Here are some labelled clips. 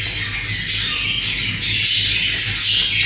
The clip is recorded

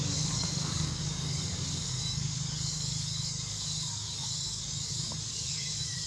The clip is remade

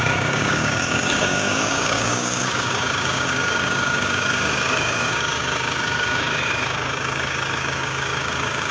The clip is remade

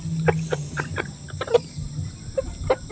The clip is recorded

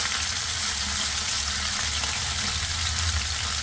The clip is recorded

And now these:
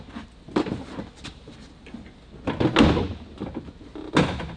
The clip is recorded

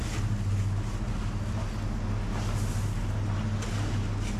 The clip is recorded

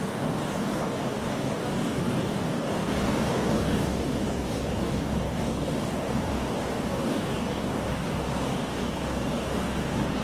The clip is remade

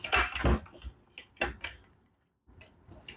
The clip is recorded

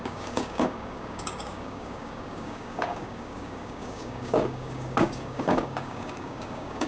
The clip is remade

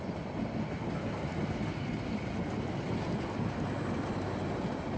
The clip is recorded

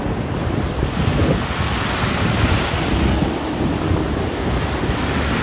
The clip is recorded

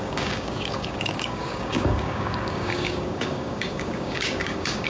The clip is remade